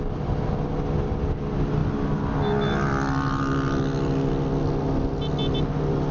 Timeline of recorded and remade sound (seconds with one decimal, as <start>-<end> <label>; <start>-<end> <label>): 0.0-6.1 recorded